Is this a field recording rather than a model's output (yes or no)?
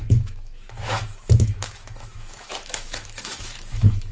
no